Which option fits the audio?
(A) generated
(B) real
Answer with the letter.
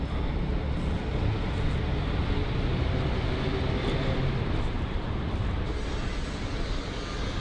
B